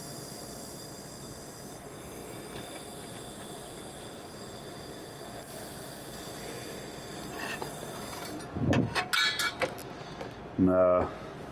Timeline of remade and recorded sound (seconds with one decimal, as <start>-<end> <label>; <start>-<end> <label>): 0.0-2.2 recorded; 2.2-3.4 remade; 3.4-7.1 recorded; 7.1-8.7 remade; 8.7-11.5 recorded